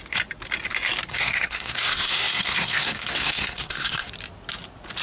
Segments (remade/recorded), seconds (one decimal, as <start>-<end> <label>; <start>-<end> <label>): 0.0-1.1 recorded; 1.1-4.1 remade; 4.1-5.0 recorded